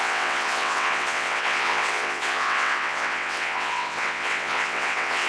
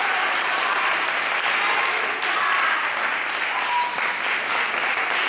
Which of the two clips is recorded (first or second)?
second